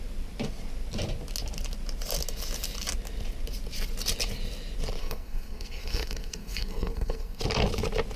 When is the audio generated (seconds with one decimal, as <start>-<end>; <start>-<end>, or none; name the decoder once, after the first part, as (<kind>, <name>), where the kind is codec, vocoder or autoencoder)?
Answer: 5.0-7.4 (codec, SNAC)